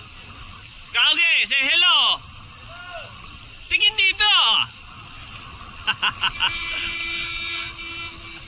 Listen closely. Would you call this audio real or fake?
real